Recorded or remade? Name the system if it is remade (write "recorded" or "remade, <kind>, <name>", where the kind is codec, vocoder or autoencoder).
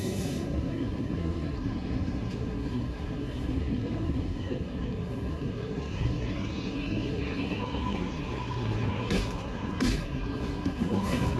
remade, codec, SNAC